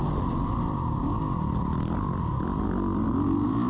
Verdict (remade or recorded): recorded